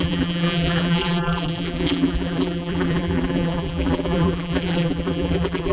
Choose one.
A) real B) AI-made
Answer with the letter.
B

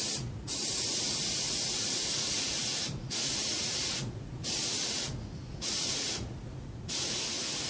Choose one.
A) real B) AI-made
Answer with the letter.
B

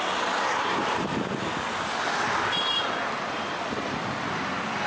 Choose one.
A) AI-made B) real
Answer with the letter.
B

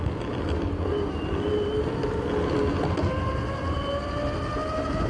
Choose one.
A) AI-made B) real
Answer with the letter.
B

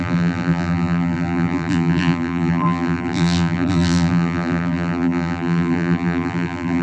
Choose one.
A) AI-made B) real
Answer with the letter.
A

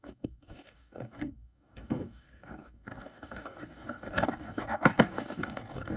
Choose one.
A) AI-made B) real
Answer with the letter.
A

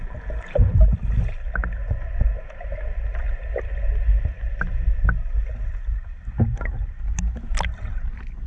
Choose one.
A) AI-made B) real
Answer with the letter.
B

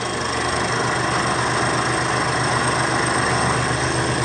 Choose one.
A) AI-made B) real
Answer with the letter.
B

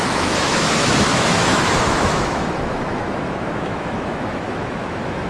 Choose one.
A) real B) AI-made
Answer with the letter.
B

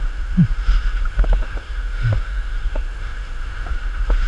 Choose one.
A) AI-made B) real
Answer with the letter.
A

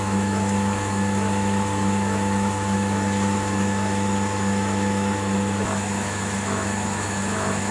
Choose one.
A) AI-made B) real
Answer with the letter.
A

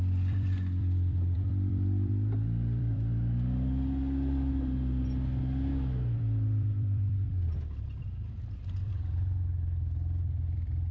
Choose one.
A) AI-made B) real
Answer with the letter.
A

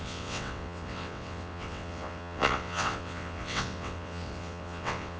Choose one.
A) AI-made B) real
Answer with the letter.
A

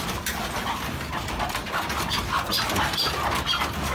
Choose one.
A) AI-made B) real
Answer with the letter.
B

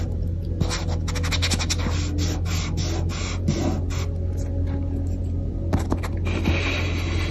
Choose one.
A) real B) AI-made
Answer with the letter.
A